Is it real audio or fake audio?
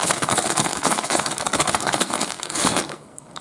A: fake